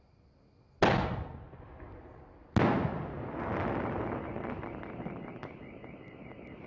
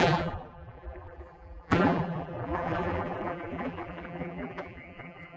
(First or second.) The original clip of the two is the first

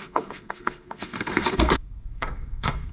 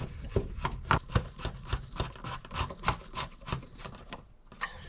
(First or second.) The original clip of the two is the second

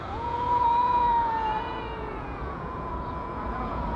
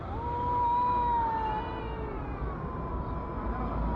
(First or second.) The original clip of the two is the second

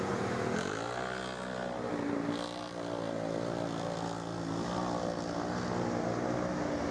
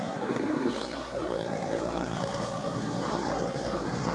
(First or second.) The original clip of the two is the first